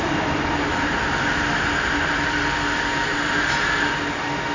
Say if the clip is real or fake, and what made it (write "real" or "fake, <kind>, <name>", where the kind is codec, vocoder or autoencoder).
real